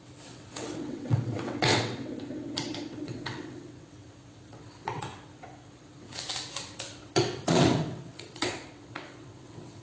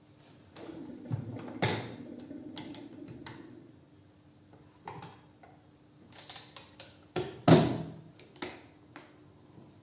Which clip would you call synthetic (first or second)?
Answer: first